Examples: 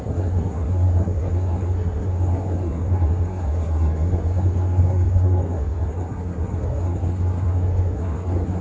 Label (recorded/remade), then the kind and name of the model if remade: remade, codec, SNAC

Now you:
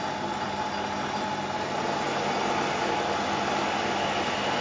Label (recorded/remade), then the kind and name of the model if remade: recorded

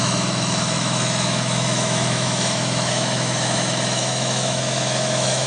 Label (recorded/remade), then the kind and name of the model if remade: remade, autoencoder, DAC-VAE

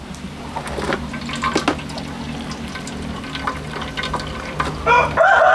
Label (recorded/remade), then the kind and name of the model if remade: recorded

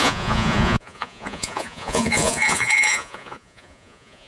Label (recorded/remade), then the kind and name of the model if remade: remade, vocoder, Vocos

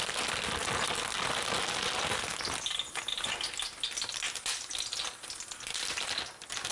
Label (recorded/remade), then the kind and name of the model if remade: recorded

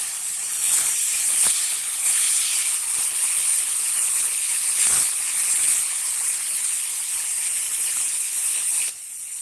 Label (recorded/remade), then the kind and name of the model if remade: remade, codec, HILCodec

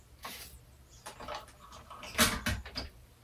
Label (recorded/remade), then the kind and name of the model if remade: recorded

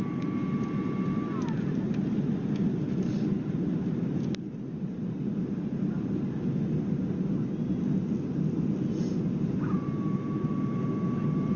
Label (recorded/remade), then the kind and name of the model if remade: recorded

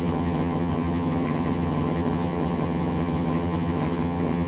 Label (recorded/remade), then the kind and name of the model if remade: remade, vocoder, HiFi-GAN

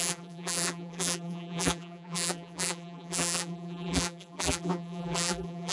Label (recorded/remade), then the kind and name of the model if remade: remade, vocoder, BigVGAN v2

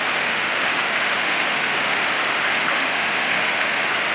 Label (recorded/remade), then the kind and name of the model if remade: remade, autoencoder, DAC-VAE